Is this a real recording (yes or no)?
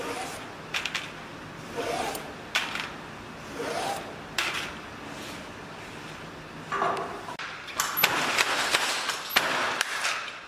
yes